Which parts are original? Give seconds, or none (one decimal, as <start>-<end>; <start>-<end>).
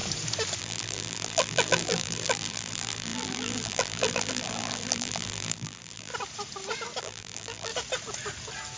0.0-0.6; 6.1-7.0; 7.7-8.8